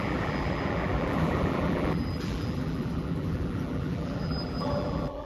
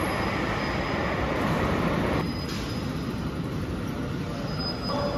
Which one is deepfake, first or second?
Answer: first